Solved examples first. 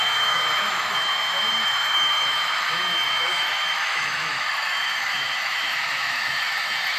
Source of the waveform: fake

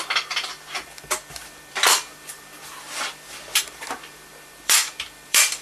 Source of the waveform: fake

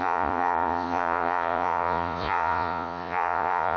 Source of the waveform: fake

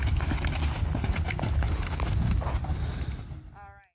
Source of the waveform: real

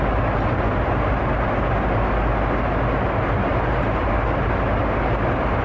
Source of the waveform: real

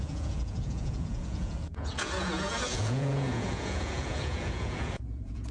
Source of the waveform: fake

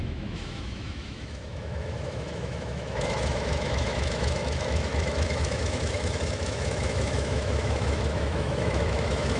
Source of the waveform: fake